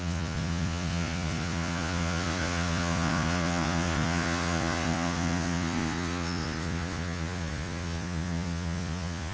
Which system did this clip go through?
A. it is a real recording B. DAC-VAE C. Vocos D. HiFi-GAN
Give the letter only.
C